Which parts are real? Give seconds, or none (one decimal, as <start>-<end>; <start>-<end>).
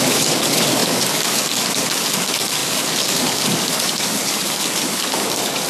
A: none